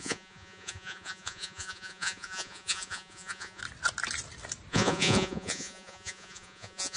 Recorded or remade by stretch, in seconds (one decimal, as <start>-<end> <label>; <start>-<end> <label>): 0.0-3.6 remade; 3.6-4.7 recorded; 4.7-7.0 remade